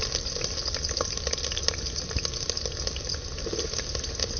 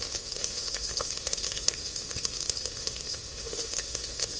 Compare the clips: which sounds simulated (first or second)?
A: second